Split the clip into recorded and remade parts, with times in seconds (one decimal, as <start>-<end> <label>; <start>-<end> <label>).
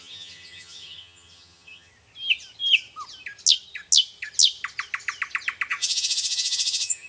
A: 0.0-1.9 remade; 1.9-5.7 recorded; 5.7-7.1 remade